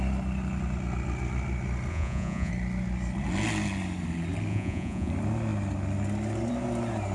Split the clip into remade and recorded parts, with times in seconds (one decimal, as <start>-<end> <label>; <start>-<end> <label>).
0.0-1.9 recorded; 1.9-2.5 remade; 2.5-4.5 recorded; 4.5-5.1 remade; 5.1-7.1 recorded